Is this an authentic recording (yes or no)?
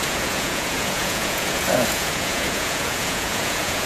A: no